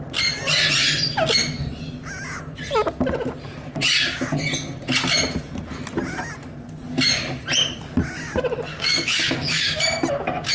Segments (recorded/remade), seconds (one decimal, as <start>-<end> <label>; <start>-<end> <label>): 0.0-8.7 recorded; 8.7-9.8 remade; 9.8-10.5 recorded